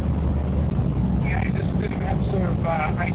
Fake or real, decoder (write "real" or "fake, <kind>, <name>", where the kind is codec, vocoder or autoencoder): real